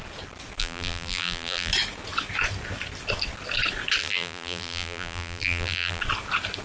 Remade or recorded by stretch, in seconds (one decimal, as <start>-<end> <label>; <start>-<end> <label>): 0.0-0.6 recorded; 0.6-1.7 remade; 1.7-4.0 recorded; 4.0-6.0 remade; 6.0-6.6 recorded